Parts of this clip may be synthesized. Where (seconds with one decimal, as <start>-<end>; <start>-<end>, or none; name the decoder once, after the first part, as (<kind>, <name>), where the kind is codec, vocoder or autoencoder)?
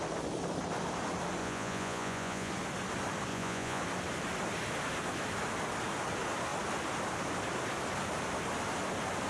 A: 1.4-2.5 (vocoder, Vocos); 3.3-3.8